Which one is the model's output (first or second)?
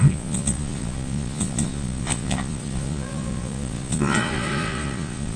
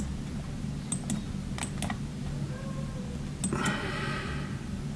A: first